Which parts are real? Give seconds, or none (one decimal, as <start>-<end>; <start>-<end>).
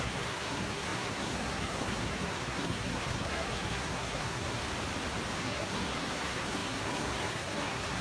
4.6-5.4